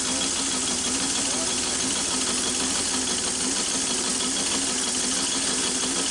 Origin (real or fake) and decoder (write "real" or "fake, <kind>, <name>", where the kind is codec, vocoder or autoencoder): real